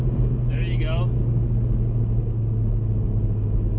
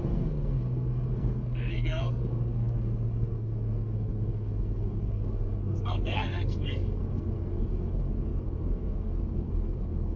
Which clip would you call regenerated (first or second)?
second